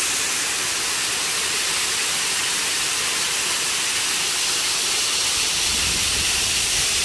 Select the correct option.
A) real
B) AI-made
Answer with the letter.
A